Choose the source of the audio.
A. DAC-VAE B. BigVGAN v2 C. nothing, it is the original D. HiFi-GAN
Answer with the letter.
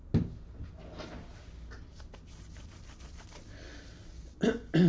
C